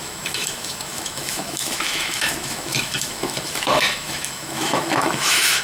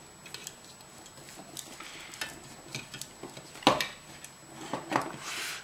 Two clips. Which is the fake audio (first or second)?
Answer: first